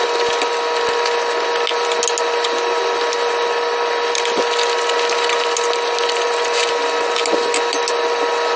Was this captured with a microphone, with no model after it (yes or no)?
yes